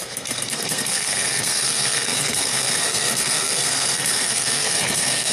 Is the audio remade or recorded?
remade